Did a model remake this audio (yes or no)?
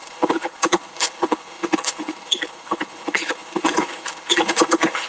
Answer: yes